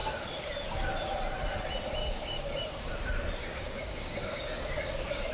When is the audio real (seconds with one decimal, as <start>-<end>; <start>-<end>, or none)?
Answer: 0.5-2.0; 2.9-3.4